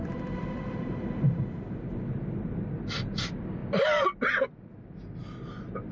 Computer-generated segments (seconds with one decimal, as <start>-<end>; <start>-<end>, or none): none